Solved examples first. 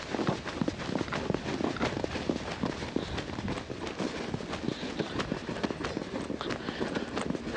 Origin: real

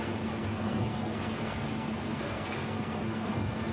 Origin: fake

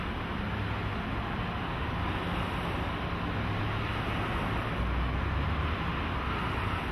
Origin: real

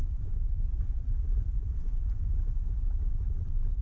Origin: fake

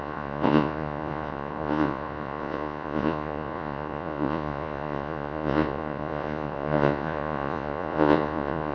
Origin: fake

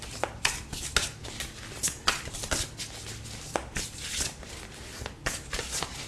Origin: real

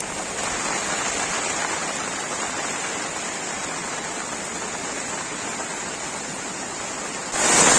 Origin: real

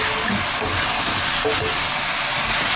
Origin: real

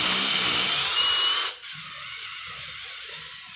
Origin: real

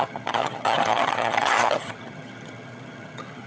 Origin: fake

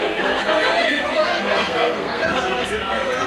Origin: fake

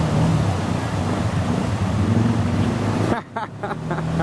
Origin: real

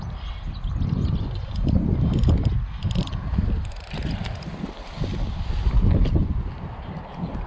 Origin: real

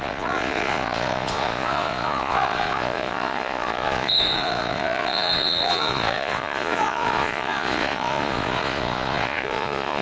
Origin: fake